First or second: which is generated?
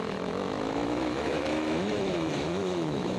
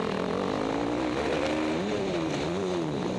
first